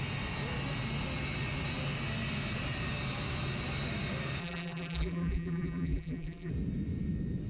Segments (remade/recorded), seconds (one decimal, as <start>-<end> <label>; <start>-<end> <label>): 0.0-4.4 recorded; 4.4-6.5 remade; 6.5-7.5 recorded